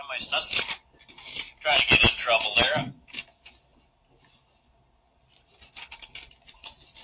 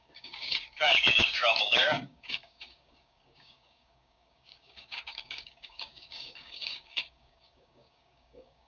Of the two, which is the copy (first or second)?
second